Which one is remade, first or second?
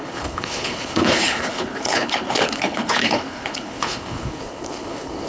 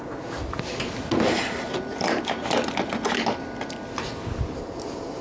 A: first